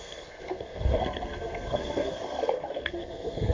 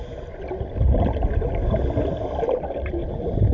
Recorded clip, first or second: second